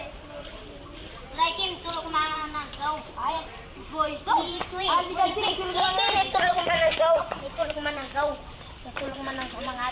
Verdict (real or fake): fake